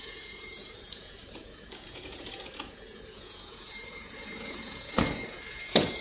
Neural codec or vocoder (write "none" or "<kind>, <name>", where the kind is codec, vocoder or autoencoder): vocoder, Vocos